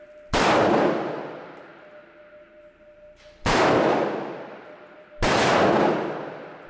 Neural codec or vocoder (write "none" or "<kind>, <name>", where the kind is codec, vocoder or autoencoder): none